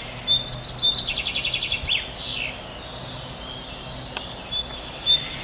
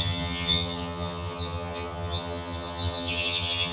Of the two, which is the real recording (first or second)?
first